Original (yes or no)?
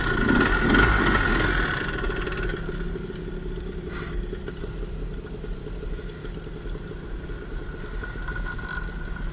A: yes